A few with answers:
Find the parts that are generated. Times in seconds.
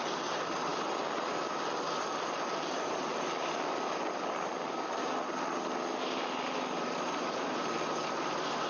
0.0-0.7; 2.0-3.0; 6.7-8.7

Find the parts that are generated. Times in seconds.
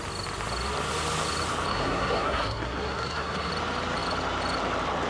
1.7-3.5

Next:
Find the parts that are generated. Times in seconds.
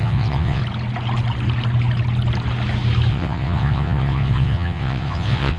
0.0-0.6; 3.1-5.6